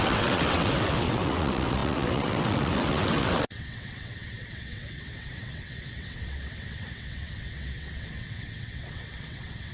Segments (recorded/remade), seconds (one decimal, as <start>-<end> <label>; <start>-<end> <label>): 0.0-9.7 remade